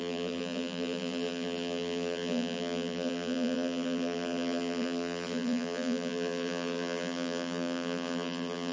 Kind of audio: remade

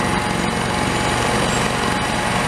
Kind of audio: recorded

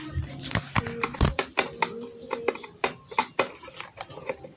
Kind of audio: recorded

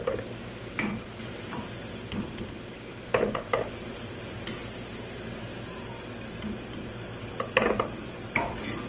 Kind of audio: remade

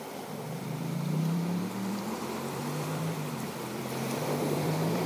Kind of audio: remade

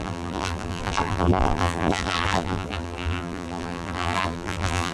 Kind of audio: remade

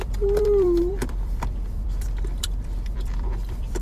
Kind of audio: remade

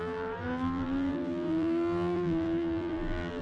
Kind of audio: remade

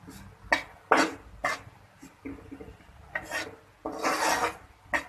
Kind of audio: recorded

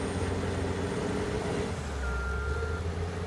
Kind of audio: recorded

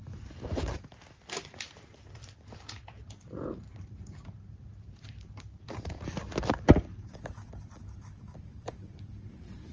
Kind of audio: remade